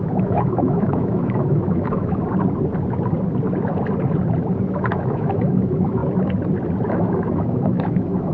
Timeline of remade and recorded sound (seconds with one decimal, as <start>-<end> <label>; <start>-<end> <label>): 0.0-2.2 remade; 2.2-4.7 recorded; 4.7-6.0 remade; 6.0-6.9 recorded; 6.9-8.3 remade